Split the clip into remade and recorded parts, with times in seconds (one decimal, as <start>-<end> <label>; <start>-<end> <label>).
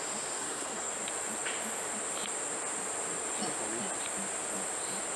0.0-0.4 recorded; 0.4-0.9 remade; 0.9-5.2 recorded